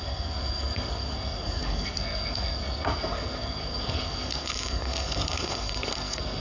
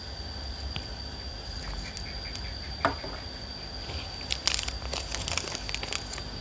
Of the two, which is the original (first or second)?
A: second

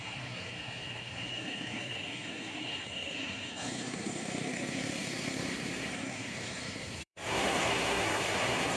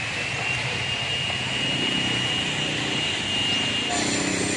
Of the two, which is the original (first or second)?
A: second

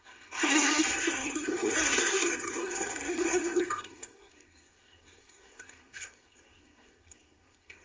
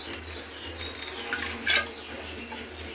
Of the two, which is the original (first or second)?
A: second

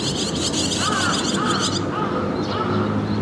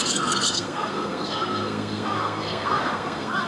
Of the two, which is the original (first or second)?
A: first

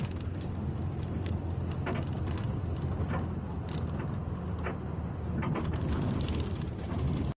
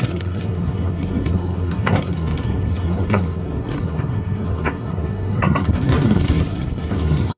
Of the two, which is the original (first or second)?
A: first